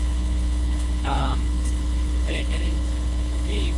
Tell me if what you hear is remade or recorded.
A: remade